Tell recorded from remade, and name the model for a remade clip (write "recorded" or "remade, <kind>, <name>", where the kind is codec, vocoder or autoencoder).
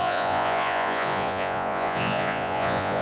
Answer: remade, vocoder, Vocos